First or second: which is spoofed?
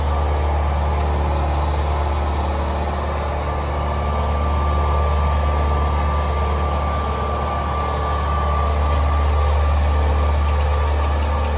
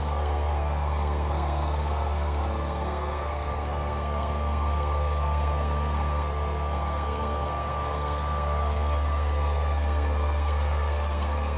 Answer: second